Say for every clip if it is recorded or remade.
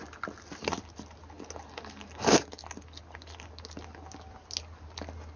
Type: recorded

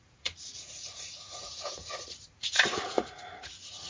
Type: remade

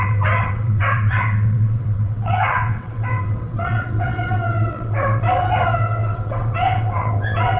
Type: remade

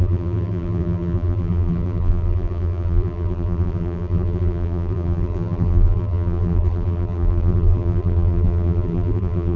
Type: remade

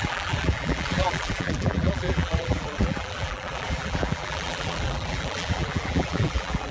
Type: remade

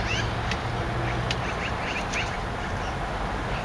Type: recorded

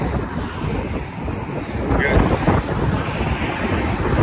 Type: recorded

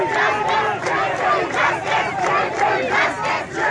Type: recorded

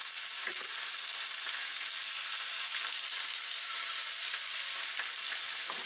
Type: recorded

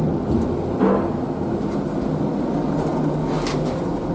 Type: recorded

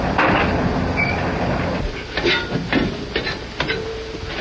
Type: recorded